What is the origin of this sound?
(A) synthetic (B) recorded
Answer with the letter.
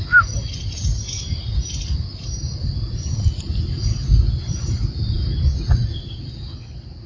B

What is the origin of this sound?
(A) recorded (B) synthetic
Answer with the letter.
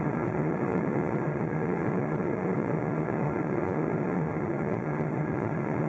B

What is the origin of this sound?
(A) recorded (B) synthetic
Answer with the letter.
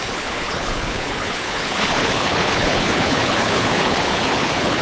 B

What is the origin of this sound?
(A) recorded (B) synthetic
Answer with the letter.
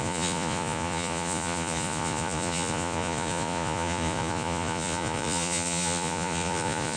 B